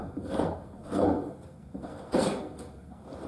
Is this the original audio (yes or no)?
no